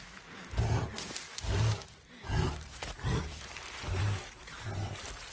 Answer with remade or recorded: recorded